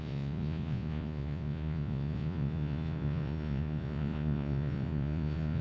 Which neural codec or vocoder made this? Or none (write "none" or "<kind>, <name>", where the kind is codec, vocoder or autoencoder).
vocoder, Vocos